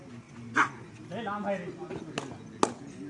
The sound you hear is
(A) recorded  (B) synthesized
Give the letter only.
A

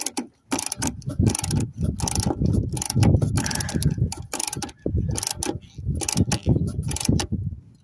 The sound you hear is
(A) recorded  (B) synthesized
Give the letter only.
A